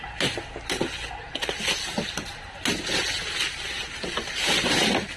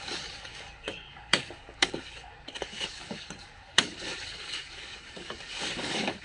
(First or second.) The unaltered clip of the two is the first